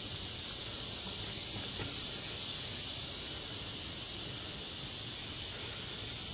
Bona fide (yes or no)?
yes